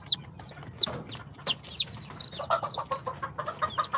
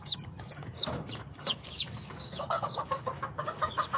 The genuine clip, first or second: first